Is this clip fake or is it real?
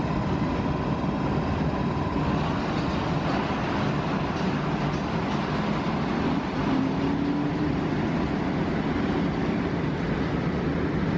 real